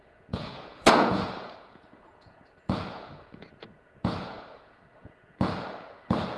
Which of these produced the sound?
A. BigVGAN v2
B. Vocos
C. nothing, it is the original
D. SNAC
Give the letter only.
B